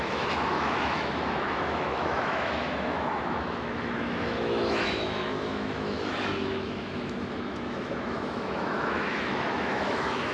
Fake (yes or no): yes